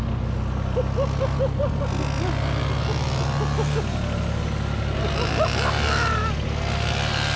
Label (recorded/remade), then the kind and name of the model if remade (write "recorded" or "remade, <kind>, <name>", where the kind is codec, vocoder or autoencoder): recorded